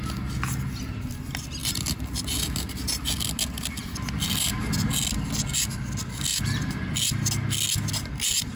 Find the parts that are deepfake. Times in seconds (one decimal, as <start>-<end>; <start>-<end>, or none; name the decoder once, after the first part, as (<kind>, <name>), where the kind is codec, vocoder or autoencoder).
none